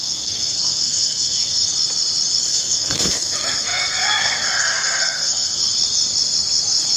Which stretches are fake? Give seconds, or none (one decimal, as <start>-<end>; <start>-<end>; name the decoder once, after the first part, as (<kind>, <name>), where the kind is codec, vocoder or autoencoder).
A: 0.0-1.6 (codec, SNAC); 2.4-5.6